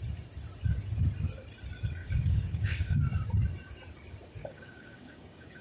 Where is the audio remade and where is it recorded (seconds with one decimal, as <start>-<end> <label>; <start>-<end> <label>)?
0.0-2.0 recorded; 2.0-3.0 remade; 3.0-4.4 recorded; 4.4-5.6 remade